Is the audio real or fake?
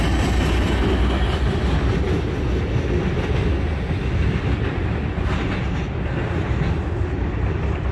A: real